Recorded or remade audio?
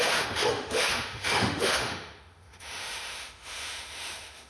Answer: remade